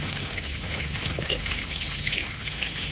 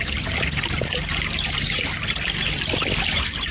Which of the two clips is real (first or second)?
second